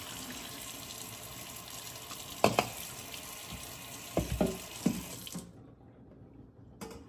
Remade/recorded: recorded